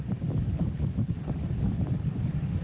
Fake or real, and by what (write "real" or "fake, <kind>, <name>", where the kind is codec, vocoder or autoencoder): fake, codec, DAC